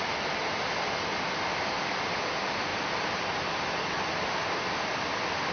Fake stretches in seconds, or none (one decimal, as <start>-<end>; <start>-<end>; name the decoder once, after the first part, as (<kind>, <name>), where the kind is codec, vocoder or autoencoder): 2.7-3.2 (vocoder, BigVGAN v2)